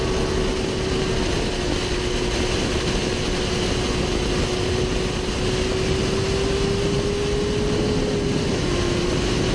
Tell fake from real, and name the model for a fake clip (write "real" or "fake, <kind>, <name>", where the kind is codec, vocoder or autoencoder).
real